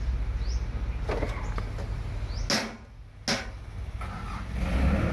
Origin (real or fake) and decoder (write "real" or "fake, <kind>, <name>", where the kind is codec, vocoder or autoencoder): real